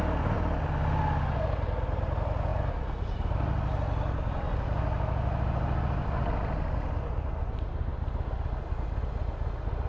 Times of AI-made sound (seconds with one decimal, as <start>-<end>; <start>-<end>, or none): none